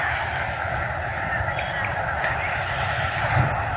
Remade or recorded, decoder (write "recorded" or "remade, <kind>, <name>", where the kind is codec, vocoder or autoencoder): recorded